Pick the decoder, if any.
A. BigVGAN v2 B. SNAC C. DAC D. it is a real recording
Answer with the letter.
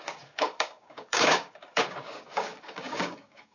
C